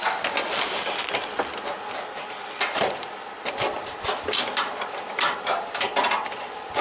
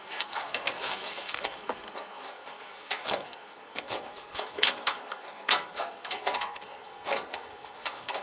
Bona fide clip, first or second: first